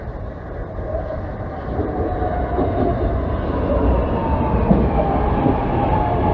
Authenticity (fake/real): real